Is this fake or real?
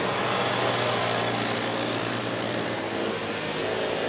real